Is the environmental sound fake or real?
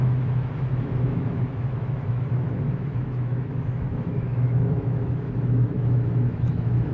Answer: fake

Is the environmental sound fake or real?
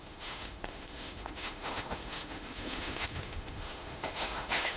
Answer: fake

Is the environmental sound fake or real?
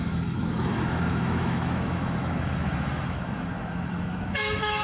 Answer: fake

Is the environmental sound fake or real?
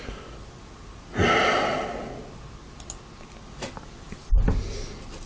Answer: real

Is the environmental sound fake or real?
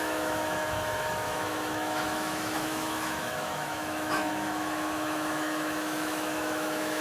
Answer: fake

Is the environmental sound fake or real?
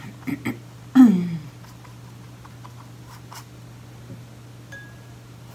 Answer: real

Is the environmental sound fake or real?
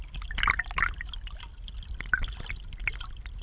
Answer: real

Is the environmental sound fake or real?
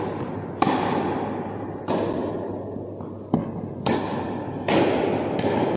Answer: real